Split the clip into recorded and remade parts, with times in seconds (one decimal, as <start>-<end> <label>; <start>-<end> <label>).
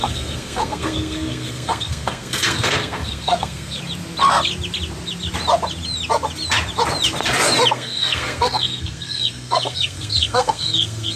0.0-3.8 remade; 3.8-7.7 recorded; 7.7-11.2 remade